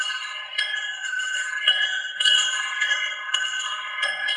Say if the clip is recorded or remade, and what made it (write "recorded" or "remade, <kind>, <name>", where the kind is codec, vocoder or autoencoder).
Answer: remade, codec, SNAC